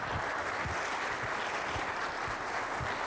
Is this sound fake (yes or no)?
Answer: no